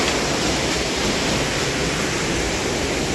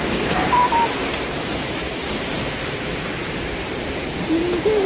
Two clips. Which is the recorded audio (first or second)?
first